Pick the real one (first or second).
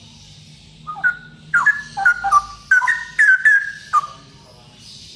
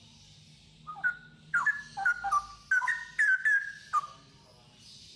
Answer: second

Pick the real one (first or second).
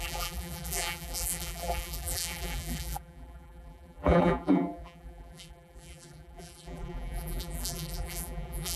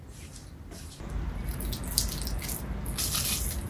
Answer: second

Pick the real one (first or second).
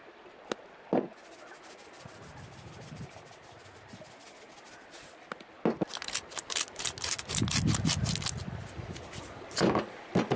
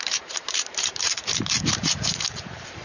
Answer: first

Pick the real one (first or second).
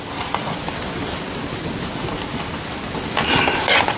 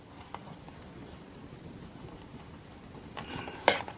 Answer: first